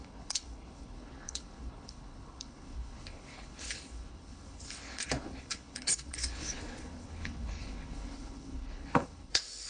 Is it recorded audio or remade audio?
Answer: remade